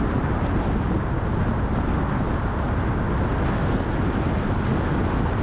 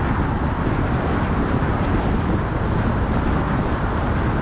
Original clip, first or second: first